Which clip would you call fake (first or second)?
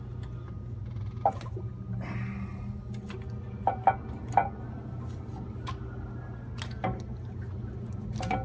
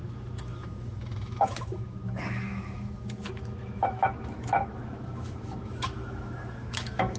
second